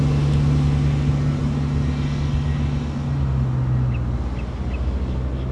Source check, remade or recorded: recorded